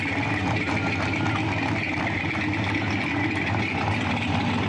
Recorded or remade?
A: recorded